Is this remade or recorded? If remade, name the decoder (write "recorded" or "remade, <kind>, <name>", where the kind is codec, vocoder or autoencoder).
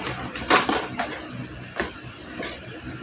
recorded